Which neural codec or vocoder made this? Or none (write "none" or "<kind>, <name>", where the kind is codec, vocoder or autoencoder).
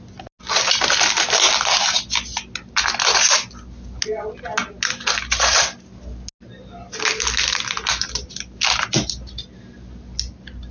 none